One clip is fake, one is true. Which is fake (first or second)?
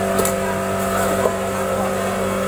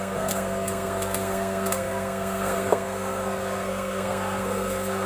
second